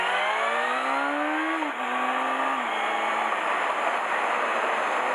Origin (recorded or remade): recorded